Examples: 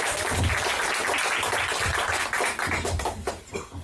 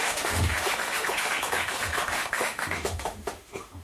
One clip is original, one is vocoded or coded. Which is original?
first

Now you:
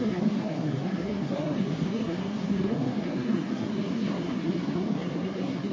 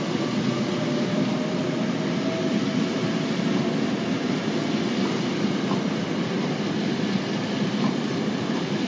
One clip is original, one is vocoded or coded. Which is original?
second